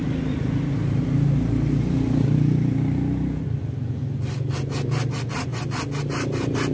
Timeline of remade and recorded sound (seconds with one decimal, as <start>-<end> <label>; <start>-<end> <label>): 0.0-6.7 recorded